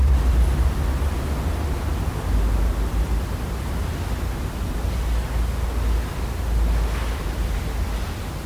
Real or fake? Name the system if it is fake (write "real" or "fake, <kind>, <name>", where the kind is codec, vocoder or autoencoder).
real